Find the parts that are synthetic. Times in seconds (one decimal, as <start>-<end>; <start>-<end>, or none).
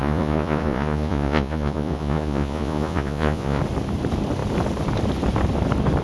0.0-3.6